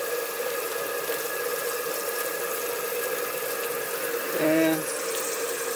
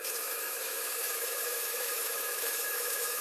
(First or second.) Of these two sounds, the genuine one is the first